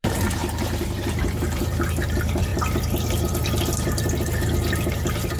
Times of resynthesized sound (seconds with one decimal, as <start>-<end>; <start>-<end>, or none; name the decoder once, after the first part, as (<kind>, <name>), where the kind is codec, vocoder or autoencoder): 0.0-2.5 (vocoder, BigVGAN v2)